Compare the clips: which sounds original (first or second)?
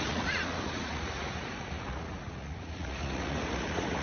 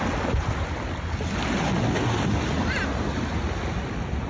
second